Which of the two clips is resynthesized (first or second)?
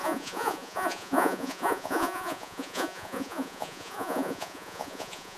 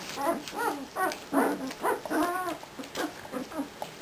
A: first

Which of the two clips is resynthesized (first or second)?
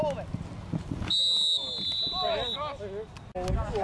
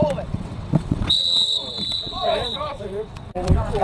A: second